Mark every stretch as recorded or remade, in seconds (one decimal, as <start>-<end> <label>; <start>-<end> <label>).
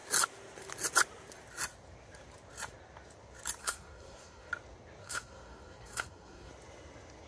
0.0-3.6 recorded; 3.6-4.5 remade; 4.5-5.0 recorded; 5.0-6.5 remade; 6.5-7.3 recorded